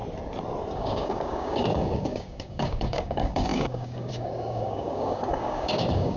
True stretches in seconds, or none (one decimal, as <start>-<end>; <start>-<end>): 0.0-0.7